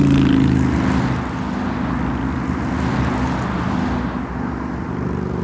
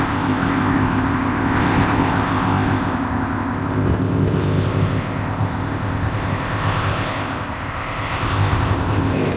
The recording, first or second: first